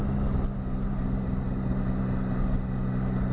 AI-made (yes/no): no